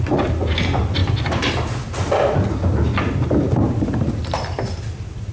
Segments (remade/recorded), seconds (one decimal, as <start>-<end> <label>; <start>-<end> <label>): 0.0-1.0 remade; 1.0-4.2 recorded; 4.2-5.3 remade